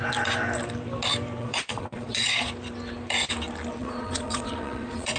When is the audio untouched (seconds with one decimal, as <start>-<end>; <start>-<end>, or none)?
0.0-1.4; 2.5-3.8